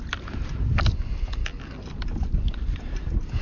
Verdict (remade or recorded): recorded